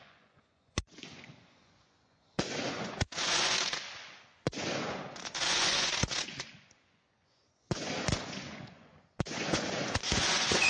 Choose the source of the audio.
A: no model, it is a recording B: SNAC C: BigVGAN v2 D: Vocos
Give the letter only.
D